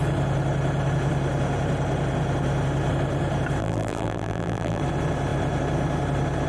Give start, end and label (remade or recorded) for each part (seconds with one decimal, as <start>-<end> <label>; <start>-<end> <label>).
0.0-3.6 recorded; 3.6-4.8 remade; 4.8-6.5 recorded